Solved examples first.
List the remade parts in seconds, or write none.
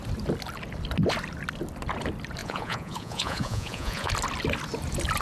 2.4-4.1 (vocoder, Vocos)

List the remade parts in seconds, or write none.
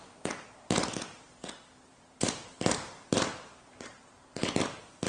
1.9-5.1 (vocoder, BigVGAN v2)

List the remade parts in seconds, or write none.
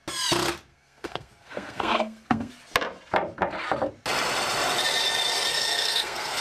0.7-2.5 (codec, SNAC); 5.5-6.4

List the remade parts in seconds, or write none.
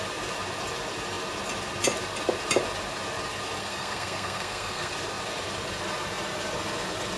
3.6-4.9 (codec, SNAC)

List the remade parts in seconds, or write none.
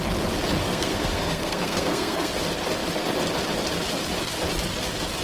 0.6-2.3 (codec, SNAC)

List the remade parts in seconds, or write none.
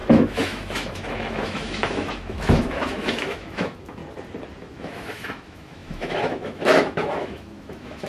0.0-4.0 (autoencoder, DAC-VAE); 4.6-8.1